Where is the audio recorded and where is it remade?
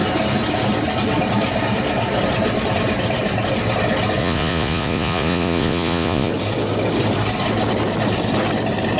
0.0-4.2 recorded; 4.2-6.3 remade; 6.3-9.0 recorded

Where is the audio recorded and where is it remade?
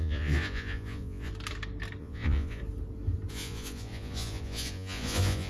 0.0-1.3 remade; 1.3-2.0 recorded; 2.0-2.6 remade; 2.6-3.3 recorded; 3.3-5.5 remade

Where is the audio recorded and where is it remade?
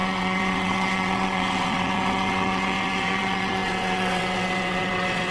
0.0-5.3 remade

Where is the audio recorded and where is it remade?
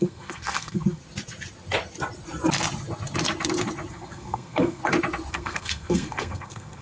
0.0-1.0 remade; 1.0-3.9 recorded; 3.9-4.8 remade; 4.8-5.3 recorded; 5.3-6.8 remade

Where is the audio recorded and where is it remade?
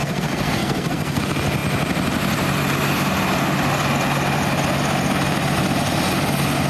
0.0-1.2 remade; 1.2-6.7 recorded